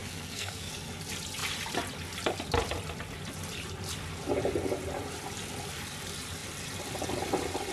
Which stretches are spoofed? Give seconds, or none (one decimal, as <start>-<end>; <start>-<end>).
0.0-0.7